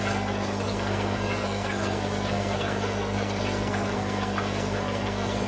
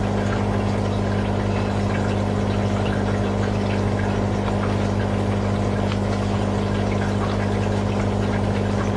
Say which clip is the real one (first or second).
second